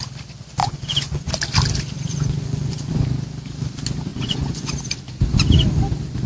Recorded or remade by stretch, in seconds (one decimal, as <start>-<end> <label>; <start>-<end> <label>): 0.0-0.6 recorded; 0.6-1.3 remade; 1.3-2.1 recorded; 2.1-2.9 remade; 2.9-4.1 recorded; 4.1-4.7 remade; 4.7-6.3 recorded